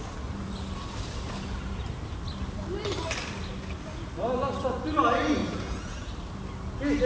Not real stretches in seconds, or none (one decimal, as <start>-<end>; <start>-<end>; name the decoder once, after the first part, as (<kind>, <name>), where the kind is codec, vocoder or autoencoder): 5.4-6.1 (vocoder, Vocos)